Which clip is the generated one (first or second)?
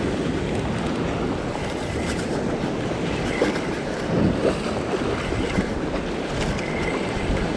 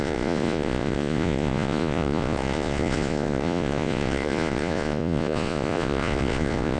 second